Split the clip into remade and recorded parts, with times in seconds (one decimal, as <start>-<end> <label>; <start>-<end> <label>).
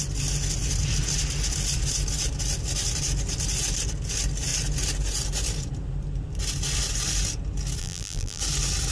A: 0.0-7.8 recorded; 7.8-8.4 remade; 8.4-8.9 recorded